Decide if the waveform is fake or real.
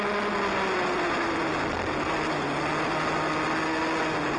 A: real